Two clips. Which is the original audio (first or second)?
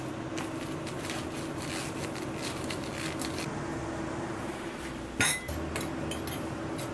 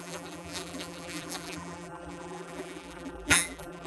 first